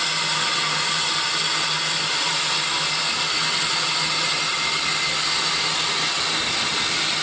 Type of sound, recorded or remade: recorded